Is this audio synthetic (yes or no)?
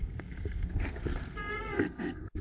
yes